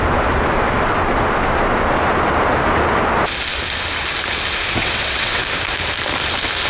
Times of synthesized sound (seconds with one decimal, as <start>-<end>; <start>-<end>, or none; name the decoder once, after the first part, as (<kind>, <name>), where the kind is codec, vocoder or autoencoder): 4.8-5.4 (vocoder, WaveNeXt)